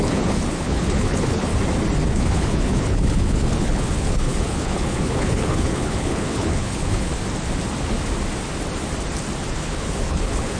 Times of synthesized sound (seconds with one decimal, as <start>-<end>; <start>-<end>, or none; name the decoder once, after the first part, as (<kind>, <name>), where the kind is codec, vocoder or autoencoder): 0.0-1.5 (codec, HILCodec); 2.1-7.1; 9.5-10.6